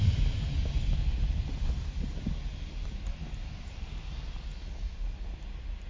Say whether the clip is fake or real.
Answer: real